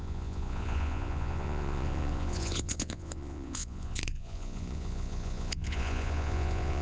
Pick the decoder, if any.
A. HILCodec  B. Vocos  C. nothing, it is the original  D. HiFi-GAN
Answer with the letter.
B